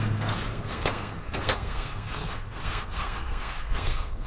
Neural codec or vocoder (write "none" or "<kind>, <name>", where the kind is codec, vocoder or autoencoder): codec, SNAC